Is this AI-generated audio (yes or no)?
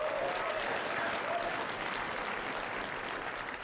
no